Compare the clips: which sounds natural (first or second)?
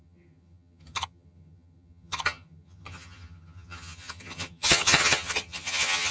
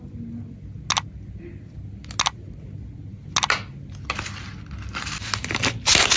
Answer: second